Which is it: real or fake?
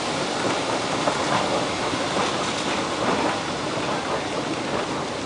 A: real